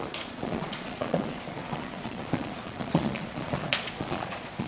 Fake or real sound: fake